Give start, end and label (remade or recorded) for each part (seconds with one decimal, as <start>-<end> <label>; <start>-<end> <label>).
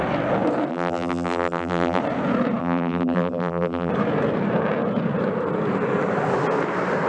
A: 0.0-0.7 recorded; 0.7-2.0 remade; 2.0-2.6 recorded; 2.6-3.9 remade; 3.9-7.1 recorded